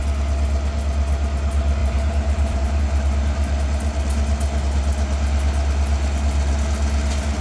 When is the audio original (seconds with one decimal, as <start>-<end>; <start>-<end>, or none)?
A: 0.0-1.8; 2.8-7.4